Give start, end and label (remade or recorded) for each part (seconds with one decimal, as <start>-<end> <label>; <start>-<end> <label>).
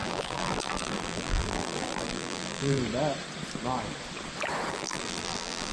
0.0-2.8 remade; 2.8-4.7 recorded; 4.7-5.7 remade